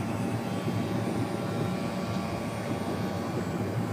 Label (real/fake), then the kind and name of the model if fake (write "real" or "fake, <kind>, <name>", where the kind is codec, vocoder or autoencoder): real